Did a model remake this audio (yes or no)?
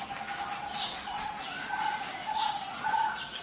no